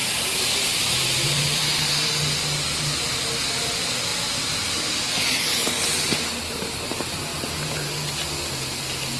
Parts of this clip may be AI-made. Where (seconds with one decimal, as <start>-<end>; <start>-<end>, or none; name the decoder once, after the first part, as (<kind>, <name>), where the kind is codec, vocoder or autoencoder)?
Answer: 0.0-0.8 (vocoder, BigVGAN v2)